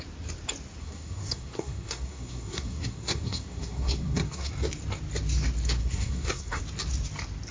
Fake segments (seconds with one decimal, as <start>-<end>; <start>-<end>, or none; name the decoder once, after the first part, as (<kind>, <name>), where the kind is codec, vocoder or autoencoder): 0.8-4.5 (codec, SNAC); 5.8-6.6